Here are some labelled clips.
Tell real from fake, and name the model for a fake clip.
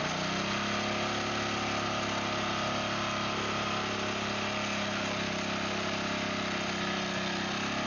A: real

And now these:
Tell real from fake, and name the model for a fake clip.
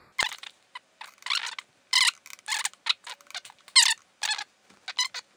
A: real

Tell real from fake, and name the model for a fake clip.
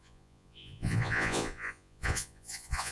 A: fake, vocoder, Vocos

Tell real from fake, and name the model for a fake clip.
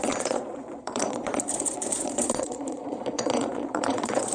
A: fake, vocoder, Vocos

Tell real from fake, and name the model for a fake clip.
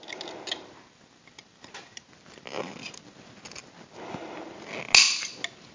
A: real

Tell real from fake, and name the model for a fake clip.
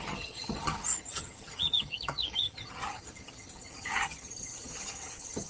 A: fake, vocoder, HiFi-GAN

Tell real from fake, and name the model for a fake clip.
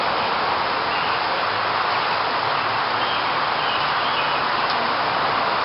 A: real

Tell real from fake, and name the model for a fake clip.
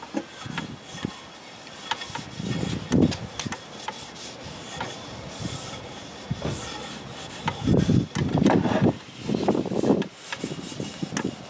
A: real